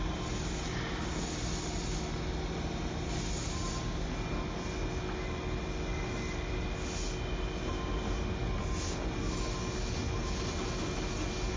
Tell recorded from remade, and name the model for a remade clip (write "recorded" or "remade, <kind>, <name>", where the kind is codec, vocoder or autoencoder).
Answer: recorded